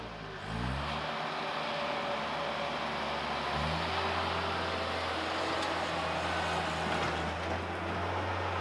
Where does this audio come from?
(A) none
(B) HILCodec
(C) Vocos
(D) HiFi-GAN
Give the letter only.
A